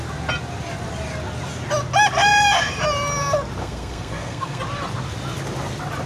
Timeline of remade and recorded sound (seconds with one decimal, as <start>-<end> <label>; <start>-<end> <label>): 0.0-3.6 recorded; 3.6-4.6 remade; 4.6-6.1 recorded

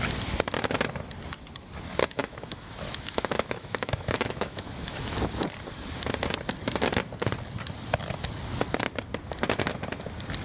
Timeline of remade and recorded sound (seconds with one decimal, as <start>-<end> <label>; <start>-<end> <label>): 0.0-2.0 recorded; 2.0-5.2 remade; 5.2-10.4 recorded

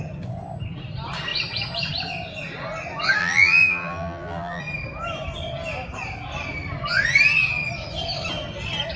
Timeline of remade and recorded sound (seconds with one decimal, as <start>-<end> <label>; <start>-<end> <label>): 0.0-3.2 recorded; 3.2-4.6 remade; 4.6-9.0 recorded

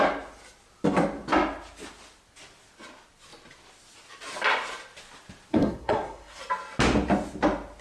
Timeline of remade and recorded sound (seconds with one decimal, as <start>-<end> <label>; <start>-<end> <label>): 0.0-5.5 recorded; 5.5-6.4 remade; 6.4-7.8 recorded

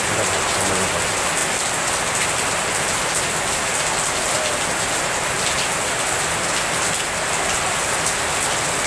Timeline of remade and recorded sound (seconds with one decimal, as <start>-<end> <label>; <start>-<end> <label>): 0.0-8.9 recorded

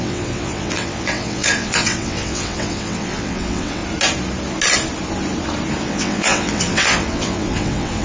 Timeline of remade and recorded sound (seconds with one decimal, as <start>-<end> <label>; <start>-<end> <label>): 0.0-3.8 remade; 3.8-5.8 recorded; 5.8-8.0 remade

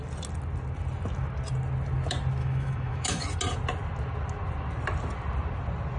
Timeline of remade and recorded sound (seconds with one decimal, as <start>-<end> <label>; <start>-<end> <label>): 0.0-2.4 recorded; 2.4-3.2 remade; 3.2-6.0 recorded

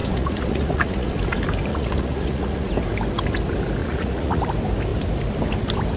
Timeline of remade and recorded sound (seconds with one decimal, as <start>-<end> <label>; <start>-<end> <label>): 0.0-1.1 remade; 1.1-1.7 recorded; 1.7-2.7 remade; 2.7-3.8 recorded; 3.8-4.4 remade; 4.4-6.0 recorded